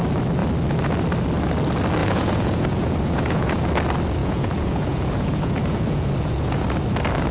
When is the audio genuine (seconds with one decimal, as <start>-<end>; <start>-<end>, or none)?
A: 0.0-2.0; 3.6-4.2; 6.6-7.3